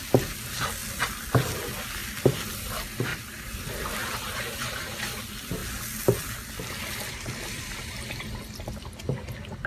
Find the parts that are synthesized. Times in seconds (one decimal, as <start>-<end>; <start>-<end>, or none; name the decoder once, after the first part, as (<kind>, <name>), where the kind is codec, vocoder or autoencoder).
2.0-2.7 (vocoder, BigVGAN v2); 3.1-4.1